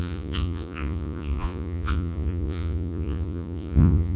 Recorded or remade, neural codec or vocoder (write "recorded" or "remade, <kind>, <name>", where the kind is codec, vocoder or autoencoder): remade, vocoder, Vocos